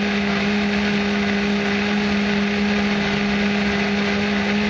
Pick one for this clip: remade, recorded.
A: recorded